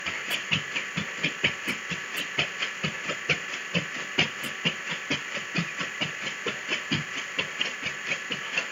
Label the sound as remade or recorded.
remade